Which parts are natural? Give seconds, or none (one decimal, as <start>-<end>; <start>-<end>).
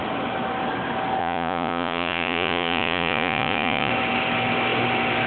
0.0-1.2; 3.9-5.3